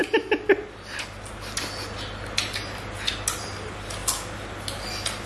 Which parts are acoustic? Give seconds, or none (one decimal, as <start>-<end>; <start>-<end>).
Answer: 0.0-5.3